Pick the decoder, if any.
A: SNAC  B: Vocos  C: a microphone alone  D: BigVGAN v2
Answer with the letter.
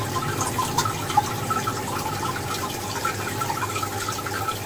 C